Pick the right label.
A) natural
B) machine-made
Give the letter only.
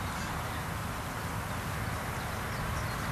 A